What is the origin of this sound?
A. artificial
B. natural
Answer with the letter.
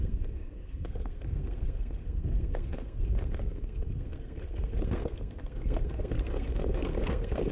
A